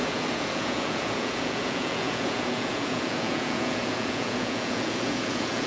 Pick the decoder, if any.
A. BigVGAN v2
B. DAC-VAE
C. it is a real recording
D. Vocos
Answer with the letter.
D